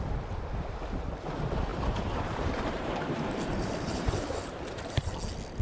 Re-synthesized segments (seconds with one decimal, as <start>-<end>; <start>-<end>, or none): 1.7-5.1